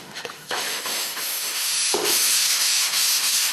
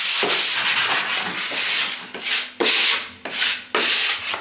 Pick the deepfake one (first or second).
first